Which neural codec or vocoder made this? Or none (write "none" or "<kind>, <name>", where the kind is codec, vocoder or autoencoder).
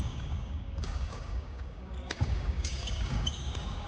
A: codec, DAC